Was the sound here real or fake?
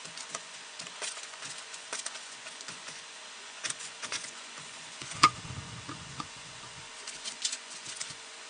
fake